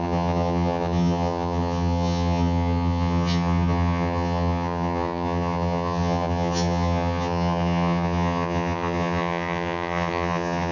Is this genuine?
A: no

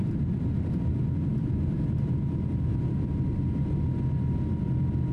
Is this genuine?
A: yes